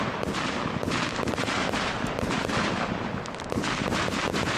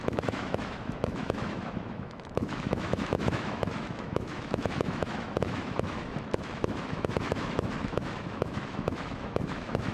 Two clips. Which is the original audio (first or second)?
first